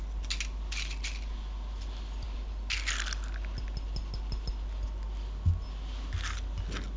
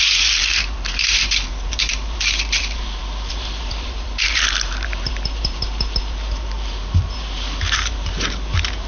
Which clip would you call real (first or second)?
first